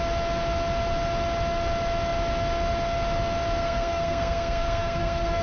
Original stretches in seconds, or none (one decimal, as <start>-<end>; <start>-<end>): 0.0-3.6